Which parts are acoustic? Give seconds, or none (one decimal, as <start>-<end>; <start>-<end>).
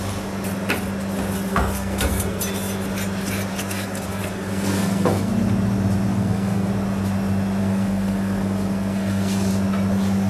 0.0-1.5; 2.4-3.5; 5.3-6.1; 6.7-7.6; 9.5-10.3